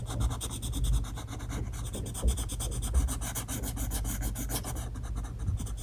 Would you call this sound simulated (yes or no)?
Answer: no